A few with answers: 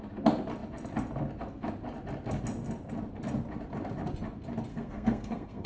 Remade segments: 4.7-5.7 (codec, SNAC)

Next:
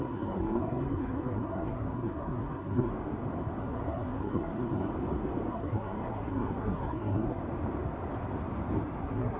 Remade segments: 0.0-2.9 (codec, SNAC); 3.6-4.9; 5.5-7.4; 9.0-9.4

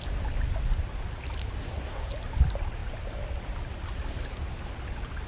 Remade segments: 1.6-2.1 (codec, SNAC)

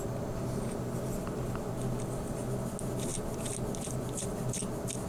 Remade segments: none

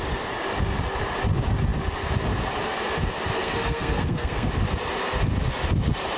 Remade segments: 3.4-4.5 (codec, SNAC)

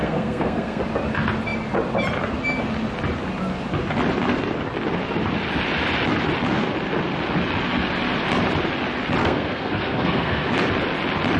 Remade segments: 0.0-0.8 (codec, SNAC); 9.2-10.5

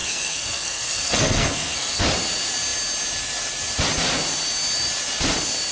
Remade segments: 0.0-2.0 (codec, SNAC)

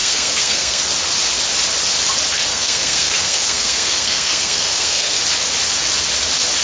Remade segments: 0.0-0.8 (codec, SNAC); 2.5-5.2